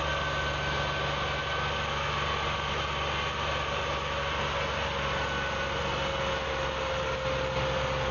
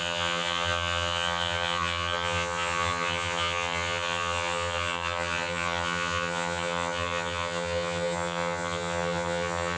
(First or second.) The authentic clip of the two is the first